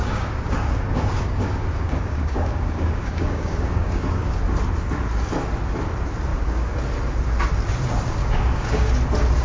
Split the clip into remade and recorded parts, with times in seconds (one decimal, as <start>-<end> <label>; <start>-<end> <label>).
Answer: 0.0-4.4 remade; 4.4-6.3 recorded; 6.3-6.8 remade; 6.8-8.2 recorded; 8.2-8.9 remade; 8.9-9.4 recorded